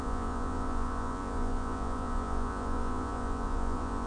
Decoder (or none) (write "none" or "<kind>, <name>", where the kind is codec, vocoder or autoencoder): vocoder, Vocos